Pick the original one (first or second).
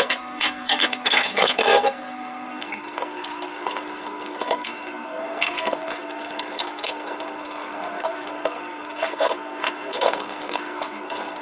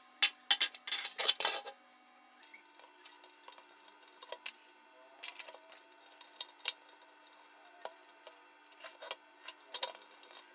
second